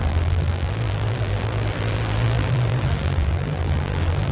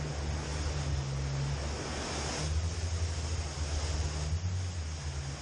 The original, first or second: second